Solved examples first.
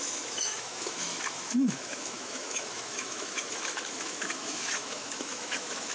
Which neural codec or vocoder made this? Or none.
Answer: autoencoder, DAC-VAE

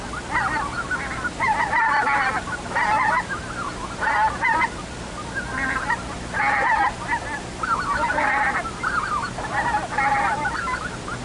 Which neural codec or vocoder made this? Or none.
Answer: none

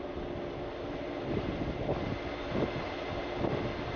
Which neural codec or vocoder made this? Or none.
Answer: none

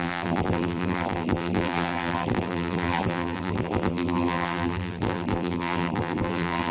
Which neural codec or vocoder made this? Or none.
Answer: vocoder, BigVGAN v2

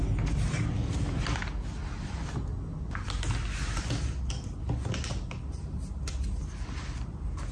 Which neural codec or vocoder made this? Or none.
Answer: none